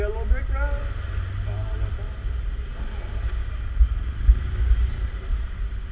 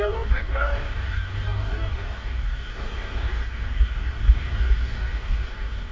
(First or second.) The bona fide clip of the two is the first